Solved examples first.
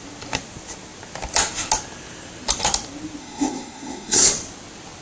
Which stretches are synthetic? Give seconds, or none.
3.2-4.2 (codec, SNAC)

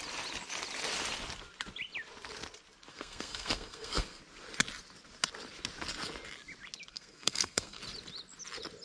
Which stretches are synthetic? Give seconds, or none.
2.9-4.2 (codec, SNAC); 6.9-7.8

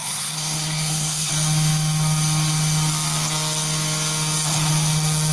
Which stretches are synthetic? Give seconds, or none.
0.0-1.3 (codec, SNAC)